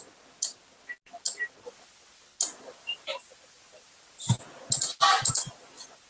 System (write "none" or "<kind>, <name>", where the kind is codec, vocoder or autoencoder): none